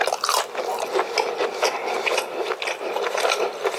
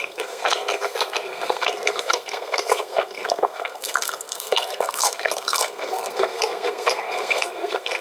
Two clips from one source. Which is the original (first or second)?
first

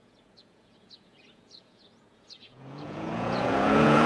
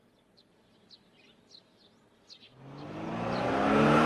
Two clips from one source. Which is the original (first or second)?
second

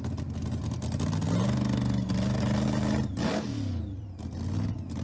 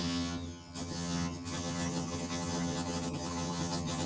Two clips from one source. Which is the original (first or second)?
first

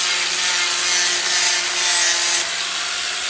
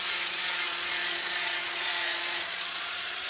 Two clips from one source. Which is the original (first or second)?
first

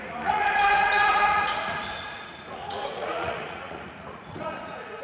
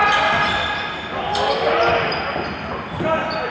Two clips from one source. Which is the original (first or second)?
second